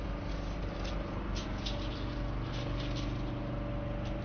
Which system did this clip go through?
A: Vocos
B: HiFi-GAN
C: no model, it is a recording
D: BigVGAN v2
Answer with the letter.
C